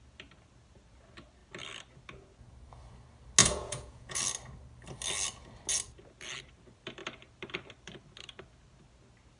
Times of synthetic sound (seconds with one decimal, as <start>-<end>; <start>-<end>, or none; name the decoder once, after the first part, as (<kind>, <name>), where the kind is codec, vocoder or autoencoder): 3.4-4.2 (vocoder, Vocos)